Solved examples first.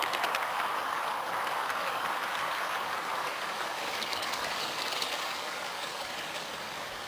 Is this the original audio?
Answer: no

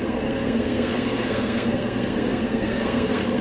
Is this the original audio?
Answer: no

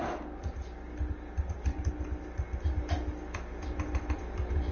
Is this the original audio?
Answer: yes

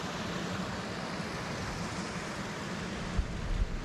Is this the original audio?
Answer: yes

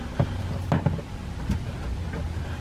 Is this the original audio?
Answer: yes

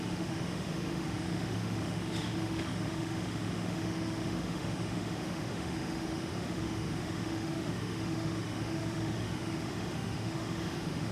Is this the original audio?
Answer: no